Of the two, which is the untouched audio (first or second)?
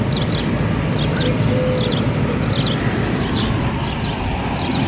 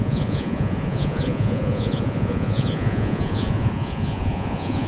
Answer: first